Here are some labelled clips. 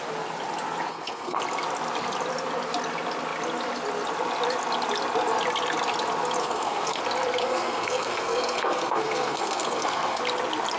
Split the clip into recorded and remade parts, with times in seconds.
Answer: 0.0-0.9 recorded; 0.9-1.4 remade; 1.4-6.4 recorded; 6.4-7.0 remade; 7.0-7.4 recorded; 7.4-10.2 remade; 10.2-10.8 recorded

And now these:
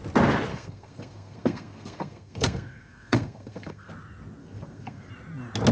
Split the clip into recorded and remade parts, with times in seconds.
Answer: 0.0-0.5 recorded; 0.5-3.9 remade; 3.9-4.4 recorded; 4.4-5.1 remade; 5.1-5.7 recorded

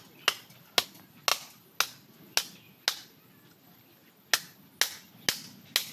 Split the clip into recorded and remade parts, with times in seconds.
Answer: 0.0-5.9 recorded

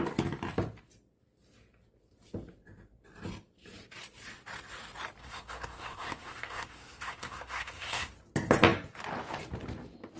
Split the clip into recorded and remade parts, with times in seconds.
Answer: 0.0-5.2 recorded; 5.2-8.1 remade; 8.1-10.2 recorded

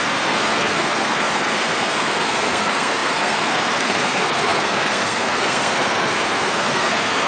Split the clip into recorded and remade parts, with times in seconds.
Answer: 0.0-7.3 remade

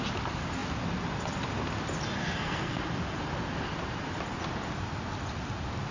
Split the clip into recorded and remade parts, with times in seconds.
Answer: 0.0-2.2 recorded; 2.2-2.8 remade; 2.8-5.9 recorded